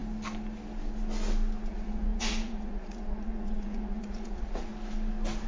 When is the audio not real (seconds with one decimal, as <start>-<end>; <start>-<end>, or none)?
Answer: 1.7-4.7